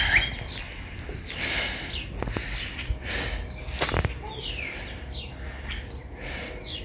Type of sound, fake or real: real